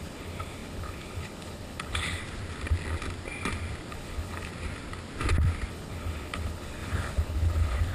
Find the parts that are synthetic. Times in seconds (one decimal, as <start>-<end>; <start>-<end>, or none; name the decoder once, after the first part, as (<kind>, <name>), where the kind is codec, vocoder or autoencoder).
0.0-2.2 (codec, HILCodec); 3.9-4.5; 5.7-7.9